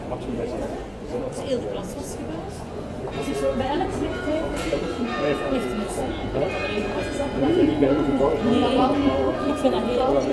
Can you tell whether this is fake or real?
fake